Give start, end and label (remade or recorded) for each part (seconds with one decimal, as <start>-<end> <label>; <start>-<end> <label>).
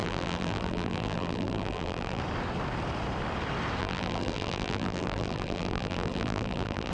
0.0-2.2 remade; 2.2-3.8 recorded; 3.8-6.9 remade